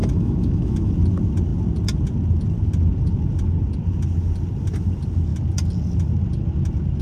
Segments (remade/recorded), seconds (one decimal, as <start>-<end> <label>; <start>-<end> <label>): 0.0-0.9 remade; 0.9-7.0 recorded